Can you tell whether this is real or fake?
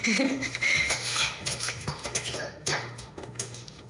fake